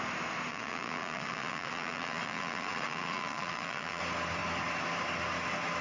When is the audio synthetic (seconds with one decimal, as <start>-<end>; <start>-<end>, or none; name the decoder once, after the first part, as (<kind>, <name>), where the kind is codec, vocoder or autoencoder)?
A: 0.5-4.0 (vocoder, Vocos)